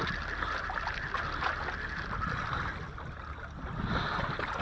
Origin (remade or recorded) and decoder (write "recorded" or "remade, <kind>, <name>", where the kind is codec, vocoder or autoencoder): recorded